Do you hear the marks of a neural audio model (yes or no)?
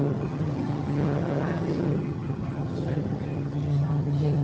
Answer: yes